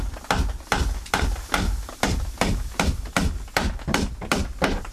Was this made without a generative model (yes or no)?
no